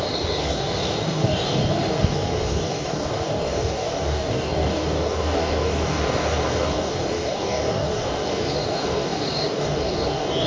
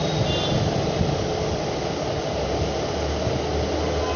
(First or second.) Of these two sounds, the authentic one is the second